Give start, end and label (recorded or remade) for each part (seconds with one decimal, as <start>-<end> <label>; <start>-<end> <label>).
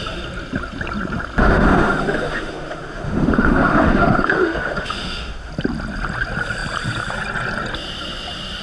0.0-1.4 recorded; 1.4-5.5 remade; 5.5-8.6 recorded